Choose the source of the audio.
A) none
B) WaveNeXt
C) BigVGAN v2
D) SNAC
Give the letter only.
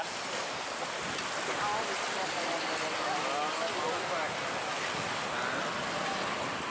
A